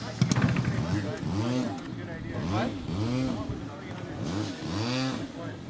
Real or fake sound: real